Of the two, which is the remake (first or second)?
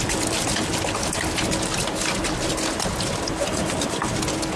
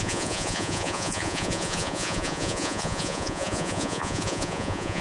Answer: second